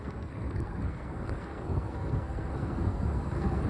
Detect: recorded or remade remade